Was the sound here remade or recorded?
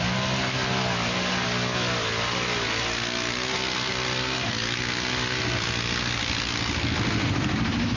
recorded